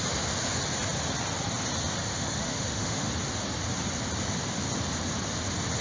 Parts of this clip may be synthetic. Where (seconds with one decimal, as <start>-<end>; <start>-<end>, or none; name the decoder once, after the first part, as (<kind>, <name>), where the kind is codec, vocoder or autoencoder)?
2.0-3.1 (autoencoder, DAC-VAE)